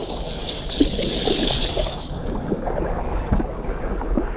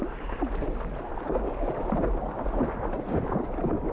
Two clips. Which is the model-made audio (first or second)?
first